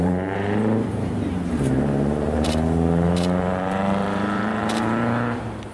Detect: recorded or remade remade